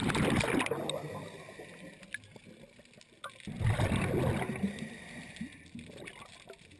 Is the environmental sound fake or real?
real